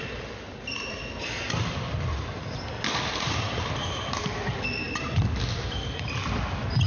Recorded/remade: recorded